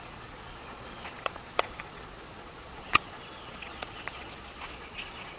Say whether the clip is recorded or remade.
remade